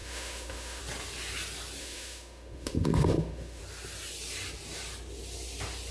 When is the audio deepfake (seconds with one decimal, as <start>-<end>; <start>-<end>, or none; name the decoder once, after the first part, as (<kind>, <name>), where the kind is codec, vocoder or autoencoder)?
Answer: 0.0-0.8 (autoencoder, DAC-VAE); 1.8-3.6